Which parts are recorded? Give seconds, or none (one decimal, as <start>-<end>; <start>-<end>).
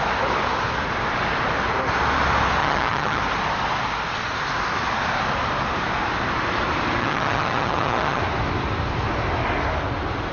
0.0-2.6; 3.2-7.0; 8.2-10.3